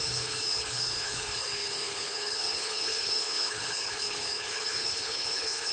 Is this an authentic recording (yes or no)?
no